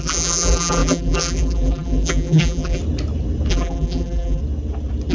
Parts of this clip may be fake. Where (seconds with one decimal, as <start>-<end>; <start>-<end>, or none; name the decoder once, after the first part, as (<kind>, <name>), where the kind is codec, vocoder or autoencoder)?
0.0-2.8 (vocoder, BigVGAN v2); 3.5-4.4